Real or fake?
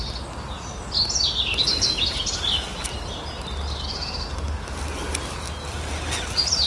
real